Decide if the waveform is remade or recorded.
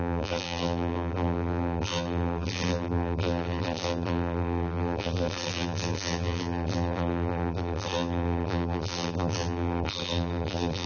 remade